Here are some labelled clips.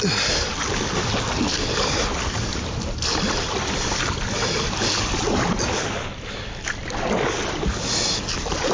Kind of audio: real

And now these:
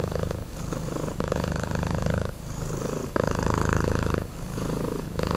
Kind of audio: fake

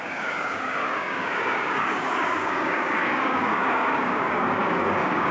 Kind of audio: fake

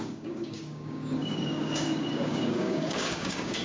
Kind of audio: fake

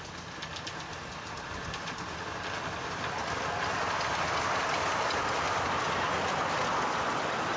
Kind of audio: real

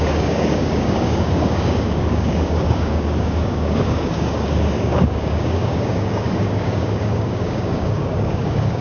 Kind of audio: fake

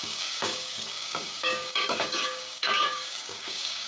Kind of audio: fake